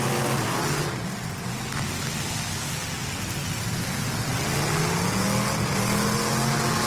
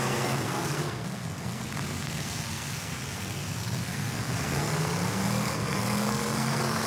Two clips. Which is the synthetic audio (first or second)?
second